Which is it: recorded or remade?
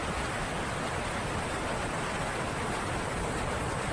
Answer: recorded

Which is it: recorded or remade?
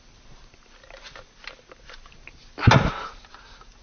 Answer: recorded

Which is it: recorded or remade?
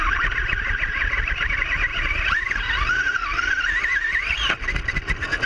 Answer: recorded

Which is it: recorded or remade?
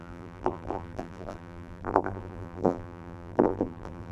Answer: remade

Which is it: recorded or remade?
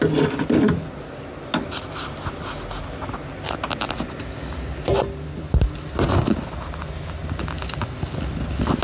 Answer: recorded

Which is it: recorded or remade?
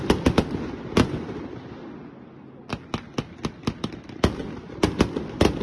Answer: recorded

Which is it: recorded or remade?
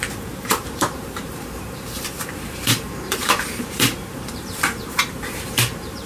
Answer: remade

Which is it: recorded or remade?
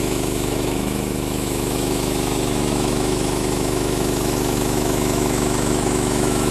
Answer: remade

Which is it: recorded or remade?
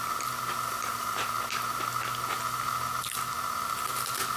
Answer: recorded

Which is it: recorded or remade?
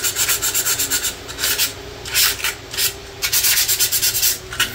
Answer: recorded